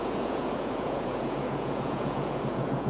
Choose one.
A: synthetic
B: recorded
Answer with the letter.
A